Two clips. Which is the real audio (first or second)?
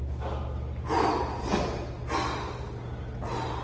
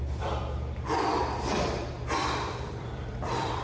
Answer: first